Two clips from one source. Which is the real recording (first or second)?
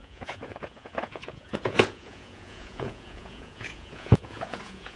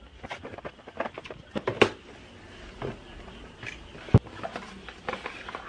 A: second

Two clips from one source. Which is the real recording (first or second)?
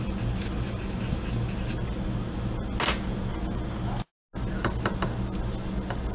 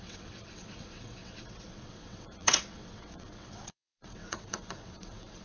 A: first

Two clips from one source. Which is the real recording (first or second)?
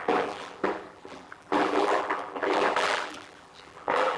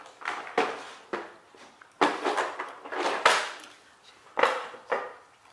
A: second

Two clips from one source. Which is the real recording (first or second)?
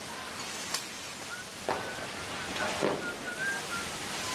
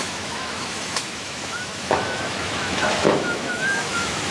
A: first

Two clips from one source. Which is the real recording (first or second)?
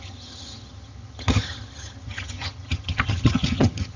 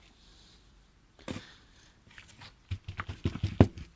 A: second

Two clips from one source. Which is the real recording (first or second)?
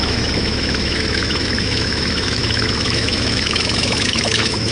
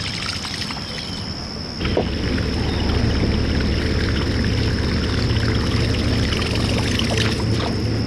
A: second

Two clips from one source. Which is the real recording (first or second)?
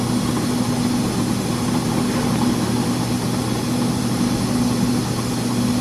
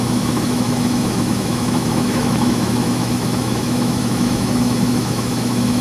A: first